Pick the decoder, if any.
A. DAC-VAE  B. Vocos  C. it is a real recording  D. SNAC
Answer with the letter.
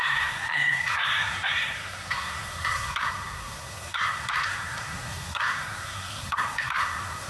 D